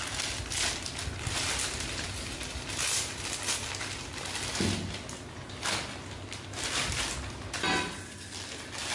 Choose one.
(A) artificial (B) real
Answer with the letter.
B